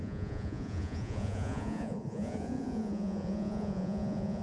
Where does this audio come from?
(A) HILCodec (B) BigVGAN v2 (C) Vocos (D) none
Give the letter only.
C